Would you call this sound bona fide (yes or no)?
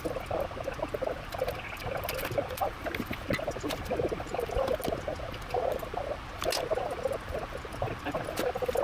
yes